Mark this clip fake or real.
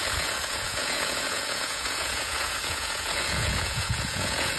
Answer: fake